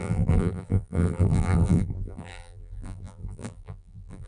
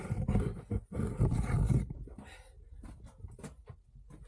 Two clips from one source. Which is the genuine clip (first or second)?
second